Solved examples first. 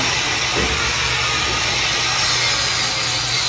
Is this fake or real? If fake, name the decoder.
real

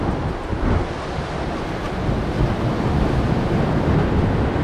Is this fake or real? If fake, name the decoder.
real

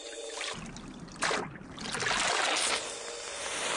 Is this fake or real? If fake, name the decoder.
real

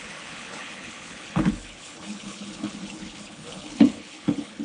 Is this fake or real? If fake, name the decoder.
fake, codec, HILCodec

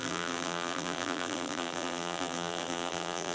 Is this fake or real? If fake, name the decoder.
fake, vocoder, BigVGAN v2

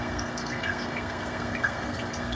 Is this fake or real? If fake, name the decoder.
fake, codec, SNAC